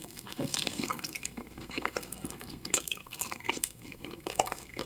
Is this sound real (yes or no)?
no